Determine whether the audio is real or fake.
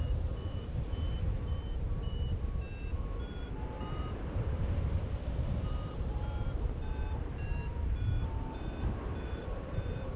fake